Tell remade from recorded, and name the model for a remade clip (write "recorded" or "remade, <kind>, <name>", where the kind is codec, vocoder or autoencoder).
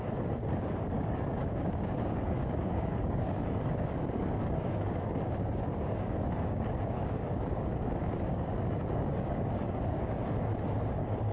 remade, codec, DAC